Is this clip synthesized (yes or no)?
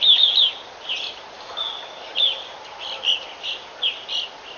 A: no